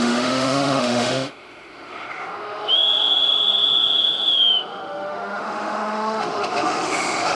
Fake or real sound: fake